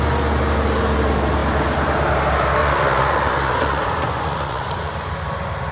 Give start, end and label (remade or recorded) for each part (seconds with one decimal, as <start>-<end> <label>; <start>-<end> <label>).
0.0-2.6 recorded; 2.6-4.9 remade; 4.9-5.7 recorded